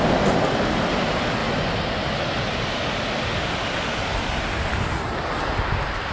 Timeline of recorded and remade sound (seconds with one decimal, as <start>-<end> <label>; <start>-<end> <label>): 0.0-6.1 recorded